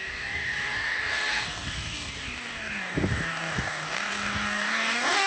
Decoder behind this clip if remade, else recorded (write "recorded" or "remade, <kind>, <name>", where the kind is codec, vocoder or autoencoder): remade, codec, DAC